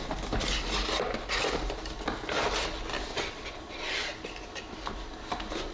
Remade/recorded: recorded